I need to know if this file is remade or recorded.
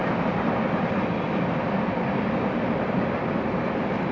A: recorded